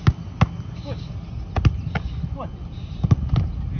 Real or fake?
real